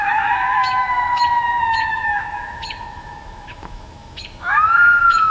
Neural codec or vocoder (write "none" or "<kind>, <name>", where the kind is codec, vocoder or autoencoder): autoencoder, DAC-VAE